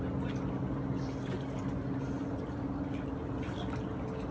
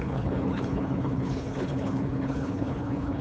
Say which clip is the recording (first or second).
first